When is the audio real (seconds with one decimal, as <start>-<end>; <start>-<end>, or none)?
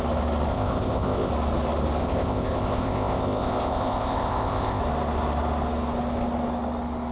0.0-0.5; 1.3-2.0; 4.8-7.1